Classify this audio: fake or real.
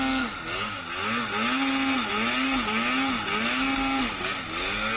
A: real